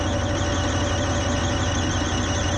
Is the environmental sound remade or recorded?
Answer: recorded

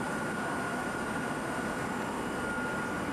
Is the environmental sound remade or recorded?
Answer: recorded